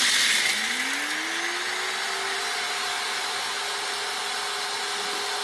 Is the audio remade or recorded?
recorded